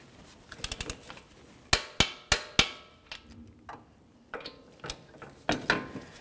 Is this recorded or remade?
recorded